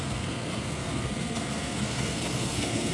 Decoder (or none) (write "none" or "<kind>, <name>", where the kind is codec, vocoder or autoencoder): codec, SNAC